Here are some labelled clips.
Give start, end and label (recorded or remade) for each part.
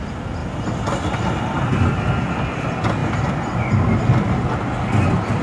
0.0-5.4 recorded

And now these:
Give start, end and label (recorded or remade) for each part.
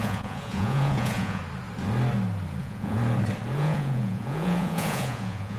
0.0-1.4 remade; 1.4-2.6 recorded; 2.6-3.0 remade; 3.0-3.6 recorded; 3.6-5.6 remade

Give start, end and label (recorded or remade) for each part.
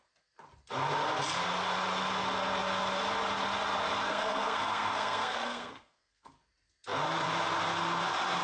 0.0-4.1 recorded; 4.1-6.4 remade; 6.4-8.4 recorded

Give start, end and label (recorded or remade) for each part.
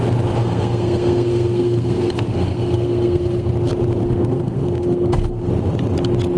0.0-0.4 recorded; 0.4-3.5 remade; 3.5-4.0 recorded; 4.0-5.5 remade; 5.5-6.4 recorded